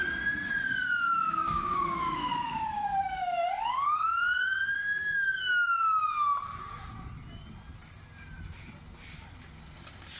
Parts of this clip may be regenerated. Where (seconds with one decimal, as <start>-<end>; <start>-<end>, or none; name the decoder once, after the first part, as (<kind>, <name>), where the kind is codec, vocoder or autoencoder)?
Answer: 1.1-6.1 (codec, DAC)